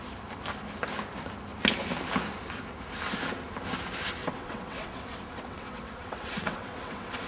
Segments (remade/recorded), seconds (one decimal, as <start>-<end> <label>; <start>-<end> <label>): 0.0-4.2 recorded; 4.2-7.3 remade